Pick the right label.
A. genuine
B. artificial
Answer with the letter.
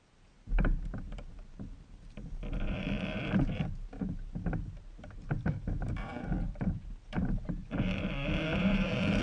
B